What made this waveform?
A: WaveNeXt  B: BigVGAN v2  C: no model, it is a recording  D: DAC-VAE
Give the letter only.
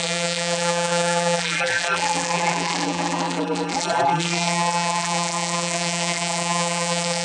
B